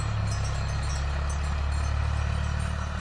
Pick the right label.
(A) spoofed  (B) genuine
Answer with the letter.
B